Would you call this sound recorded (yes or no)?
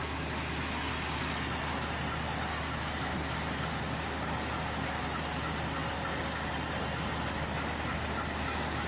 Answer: yes